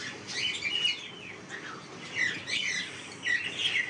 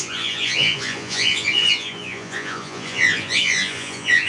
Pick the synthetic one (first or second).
second